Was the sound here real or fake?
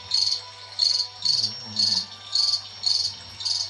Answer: real